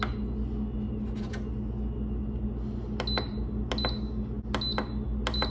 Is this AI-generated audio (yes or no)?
no